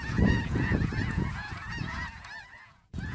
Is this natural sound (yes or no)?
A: no